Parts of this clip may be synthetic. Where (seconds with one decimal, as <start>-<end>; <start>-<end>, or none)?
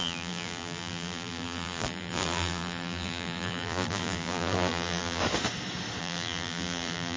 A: 0.0-5.2; 6.0-7.2